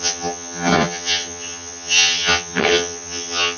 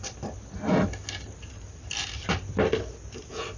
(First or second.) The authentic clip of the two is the second